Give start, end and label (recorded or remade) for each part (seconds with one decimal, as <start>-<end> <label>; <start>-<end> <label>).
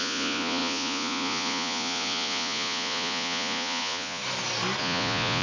0.0-4.2 remade; 4.2-4.8 recorded; 4.8-5.4 remade